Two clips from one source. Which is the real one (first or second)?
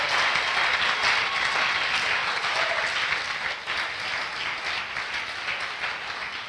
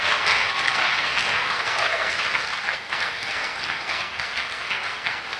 first